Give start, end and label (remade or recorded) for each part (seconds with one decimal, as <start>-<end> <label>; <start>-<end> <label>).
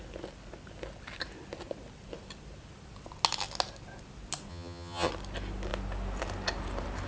0.0-4.5 recorded; 4.5-5.1 remade; 5.1-7.1 recorded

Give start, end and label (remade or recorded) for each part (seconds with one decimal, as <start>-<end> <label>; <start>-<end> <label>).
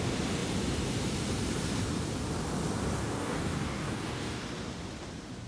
0.0-3.0 recorded; 3.0-4.4 remade; 4.4-5.5 recorded